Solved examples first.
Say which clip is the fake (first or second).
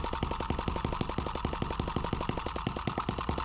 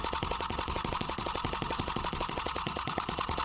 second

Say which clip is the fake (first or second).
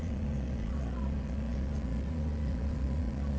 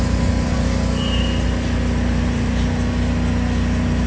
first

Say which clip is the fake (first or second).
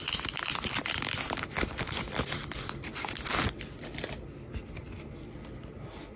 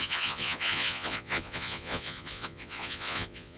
second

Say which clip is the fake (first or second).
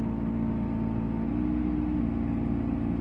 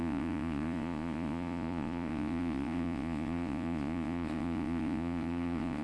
second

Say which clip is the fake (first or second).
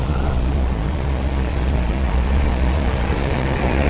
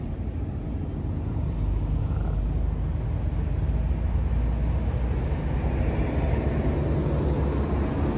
first